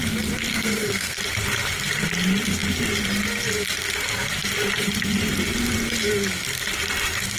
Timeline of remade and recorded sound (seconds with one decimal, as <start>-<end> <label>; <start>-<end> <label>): 0.0-0.5 recorded; 0.5-1.2 remade; 1.2-7.4 recorded